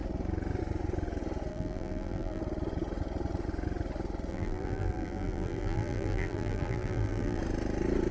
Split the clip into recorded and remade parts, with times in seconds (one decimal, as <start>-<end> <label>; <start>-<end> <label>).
0.0-1.5 recorded; 1.5-2.4 remade; 2.4-4.3 recorded; 4.3-7.4 remade; 7.4-8.1 recorded